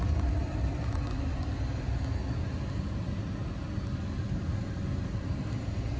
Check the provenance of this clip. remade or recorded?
recorded